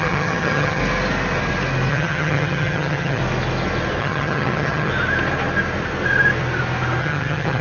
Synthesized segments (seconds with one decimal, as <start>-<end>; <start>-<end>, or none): 0.0-0.8; 1.9-3.2; 4.0-4.9; 7.0-7.6